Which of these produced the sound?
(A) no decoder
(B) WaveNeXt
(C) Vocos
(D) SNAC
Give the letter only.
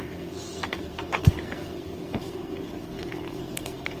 D